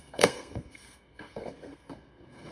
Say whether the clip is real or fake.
fake